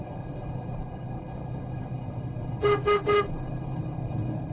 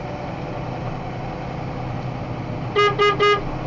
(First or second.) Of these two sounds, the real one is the second